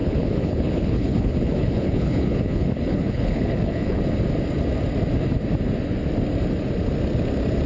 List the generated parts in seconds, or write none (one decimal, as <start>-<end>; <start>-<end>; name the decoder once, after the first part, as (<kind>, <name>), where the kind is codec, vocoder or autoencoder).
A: 0.0-4.0 (codec, HILCodec)